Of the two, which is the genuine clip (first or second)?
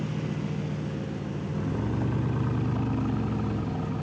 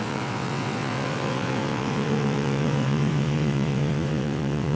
first